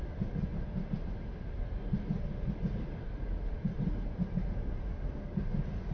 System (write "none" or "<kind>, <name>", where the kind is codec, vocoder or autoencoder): none